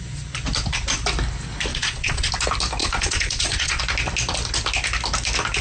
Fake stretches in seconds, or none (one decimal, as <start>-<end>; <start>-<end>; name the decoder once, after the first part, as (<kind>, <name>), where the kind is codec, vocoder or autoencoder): 1.7-2.3 (vocoder, Vocos); 2.8-3.8